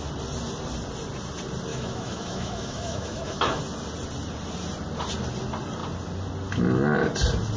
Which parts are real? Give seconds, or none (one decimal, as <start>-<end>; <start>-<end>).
0.0-1.7; 3.6-7.6